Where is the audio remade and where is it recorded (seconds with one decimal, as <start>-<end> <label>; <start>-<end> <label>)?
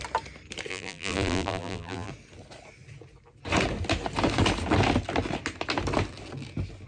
0.0-0.7 recorded; 0.7-2.1 remade; 2.1-6.9 recorded